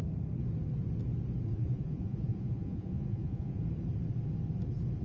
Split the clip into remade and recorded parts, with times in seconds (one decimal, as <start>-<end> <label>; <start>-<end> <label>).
0.0-1.5 recorded; 1.5-3.6 remade; 3.6-5.0 recorded